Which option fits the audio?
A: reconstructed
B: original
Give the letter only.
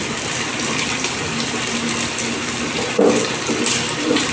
A